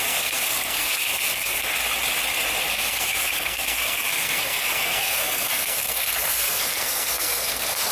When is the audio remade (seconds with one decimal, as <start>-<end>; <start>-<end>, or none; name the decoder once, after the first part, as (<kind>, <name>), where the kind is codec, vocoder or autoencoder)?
0.0-1.8 (codec, SNAC); 2.6-7.9